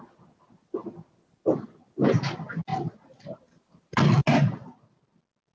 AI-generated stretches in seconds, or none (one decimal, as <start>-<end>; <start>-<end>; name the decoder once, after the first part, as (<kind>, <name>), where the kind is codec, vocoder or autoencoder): none